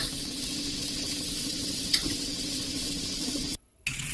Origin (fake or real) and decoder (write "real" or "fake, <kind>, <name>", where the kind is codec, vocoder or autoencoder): fake, vocoder, WaveNeXt